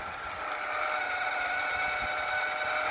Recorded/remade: recorded